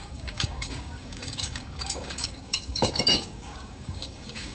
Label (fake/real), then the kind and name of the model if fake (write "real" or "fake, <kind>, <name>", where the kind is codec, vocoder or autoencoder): fake, codec, DAC